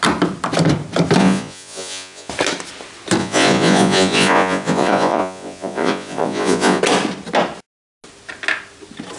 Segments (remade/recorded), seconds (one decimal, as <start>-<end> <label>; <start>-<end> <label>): 0.0-1.2 recorded; 1.2-2.3 remade; 2.3-3.2 recorded; 3.2-6.8 remade; 6.8-9.2 recorded